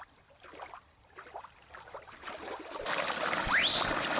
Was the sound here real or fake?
fake